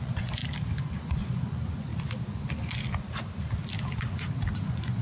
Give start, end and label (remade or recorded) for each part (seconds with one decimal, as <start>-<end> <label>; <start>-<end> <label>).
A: 0.0-0.4 remade; 0.4-1.0 recorded; 1.0-1.9 remade; 1.9-4.6 recorded; 4.6-5.0 remade